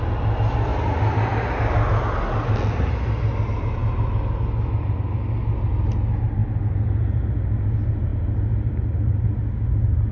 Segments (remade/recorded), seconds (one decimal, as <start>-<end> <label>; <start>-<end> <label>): 0.0-10.1 recorded